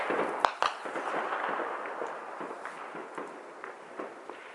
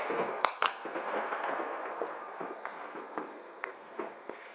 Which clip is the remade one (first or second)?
second